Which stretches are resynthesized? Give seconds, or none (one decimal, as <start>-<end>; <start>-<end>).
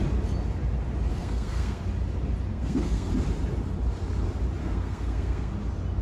1.1-1.8; 2.5-3.1; 4.6-5.5